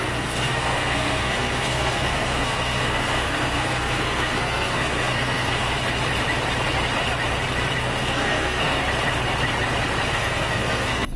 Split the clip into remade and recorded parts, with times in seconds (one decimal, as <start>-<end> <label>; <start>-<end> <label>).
0.0-5.8 remade; 5.8-7.8 recorded; 7.8-8.8 remade; 8.8-10.1 recorded; 10.1-11.2 remade